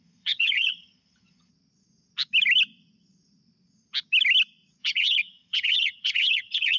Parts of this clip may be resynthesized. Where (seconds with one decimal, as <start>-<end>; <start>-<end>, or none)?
0.0-1.5; 4.8-6.8